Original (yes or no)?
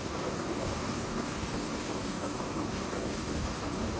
no